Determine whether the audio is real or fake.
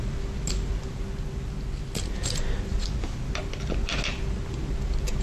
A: real